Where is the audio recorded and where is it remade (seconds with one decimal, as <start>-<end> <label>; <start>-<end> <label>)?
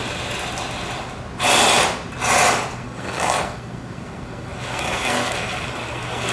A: 0.0-2.7 recorded; 2.7-6.3 remade